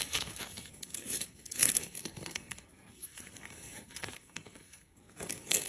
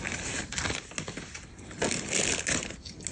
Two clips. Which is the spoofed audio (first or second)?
first